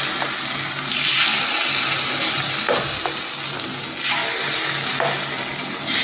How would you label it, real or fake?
real